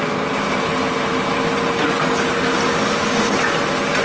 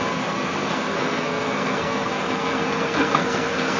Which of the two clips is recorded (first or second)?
first